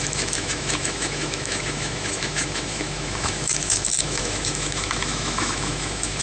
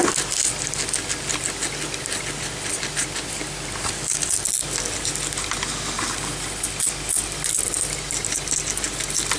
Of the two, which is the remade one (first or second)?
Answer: first